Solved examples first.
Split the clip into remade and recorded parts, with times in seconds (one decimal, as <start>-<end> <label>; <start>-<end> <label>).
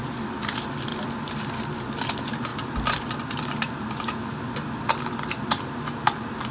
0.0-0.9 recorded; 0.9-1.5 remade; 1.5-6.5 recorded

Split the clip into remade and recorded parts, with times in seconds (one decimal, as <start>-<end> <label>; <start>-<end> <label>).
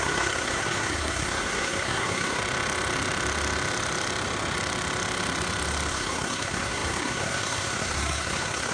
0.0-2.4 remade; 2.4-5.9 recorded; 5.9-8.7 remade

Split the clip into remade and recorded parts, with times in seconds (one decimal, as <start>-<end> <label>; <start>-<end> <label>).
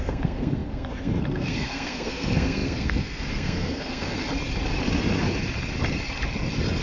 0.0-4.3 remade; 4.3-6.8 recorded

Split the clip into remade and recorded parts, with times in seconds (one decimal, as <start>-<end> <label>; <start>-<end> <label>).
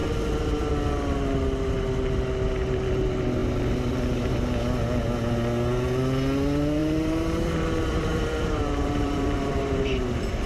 0.0-0.7 remade; 0.7-6.8 recorded; 6.8-10.0 remade; 10.0-10.5 recorded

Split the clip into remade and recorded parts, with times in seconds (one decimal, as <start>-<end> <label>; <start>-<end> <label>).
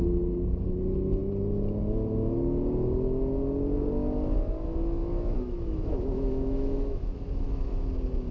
0.0-5.0 recorded; 5.0-7.9 remade; 7.9-8.3 recorded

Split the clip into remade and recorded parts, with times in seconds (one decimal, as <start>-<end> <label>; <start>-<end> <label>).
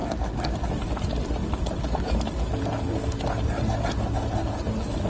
0.0-5.1 recorded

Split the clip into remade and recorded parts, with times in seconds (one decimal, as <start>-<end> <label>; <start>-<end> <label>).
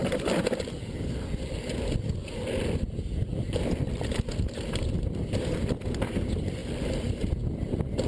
0.0-0.9 remade; 0.9-2.2 recorded; 2.2-6.0 remade; 6.0-6.6 recorded; 6.6-8.1 remade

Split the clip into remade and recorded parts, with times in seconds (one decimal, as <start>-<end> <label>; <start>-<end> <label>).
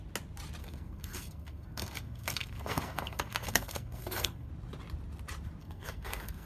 0.0-0.6 recorded; 0.6-4.5 remade; 4.5-5.6 recorded; 5.6-6.5 remade